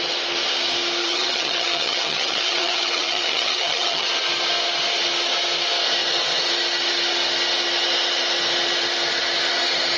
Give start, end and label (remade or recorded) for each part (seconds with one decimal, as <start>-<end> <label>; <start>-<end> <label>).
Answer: 0.0-1.0 recorded; 1.0-4.1 remade; 4.1-10.0 recorded